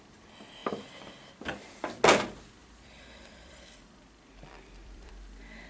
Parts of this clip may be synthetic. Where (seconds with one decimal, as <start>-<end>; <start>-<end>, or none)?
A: 2.6-5.1